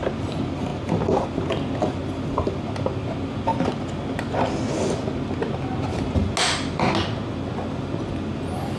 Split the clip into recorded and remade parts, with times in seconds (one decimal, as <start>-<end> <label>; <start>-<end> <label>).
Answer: 0.0-8.8 recorded